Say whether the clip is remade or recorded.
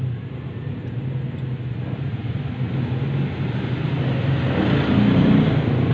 recorded